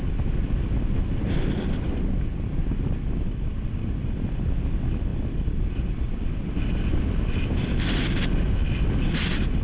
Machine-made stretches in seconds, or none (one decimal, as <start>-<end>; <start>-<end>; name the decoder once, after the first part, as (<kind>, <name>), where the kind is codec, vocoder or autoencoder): none